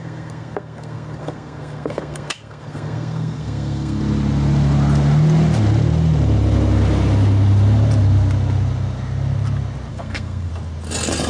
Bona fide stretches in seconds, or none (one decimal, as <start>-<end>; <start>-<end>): 4.0-9.9; 10.5-11.3